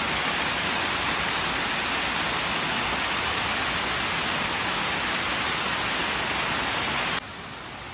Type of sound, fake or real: real